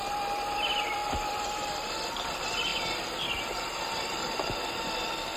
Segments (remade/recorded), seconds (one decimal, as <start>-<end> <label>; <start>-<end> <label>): 0.0-5.4 recorded